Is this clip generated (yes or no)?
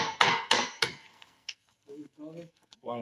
yes